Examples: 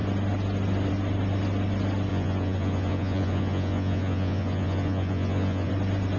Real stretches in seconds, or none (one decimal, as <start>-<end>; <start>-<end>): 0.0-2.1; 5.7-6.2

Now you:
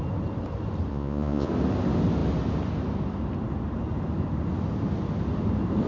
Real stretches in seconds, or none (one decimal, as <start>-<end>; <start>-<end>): 0.0-0.9; 1.5-5.9

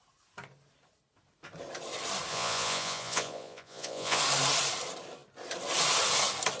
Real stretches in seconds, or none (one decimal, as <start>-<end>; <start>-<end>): 0.0-2.3; 4.2-6.6